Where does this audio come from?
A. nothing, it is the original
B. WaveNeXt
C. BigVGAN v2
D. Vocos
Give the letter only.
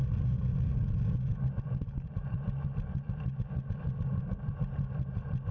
A